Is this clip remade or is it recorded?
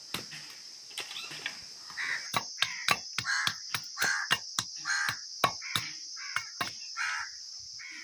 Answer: recorded